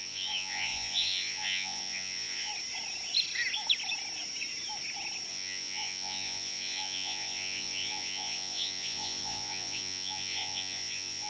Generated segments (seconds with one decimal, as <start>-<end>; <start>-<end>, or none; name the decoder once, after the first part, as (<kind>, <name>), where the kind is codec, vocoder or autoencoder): 0.0-2.5 (vocoder, Vocos); 5.3-11.3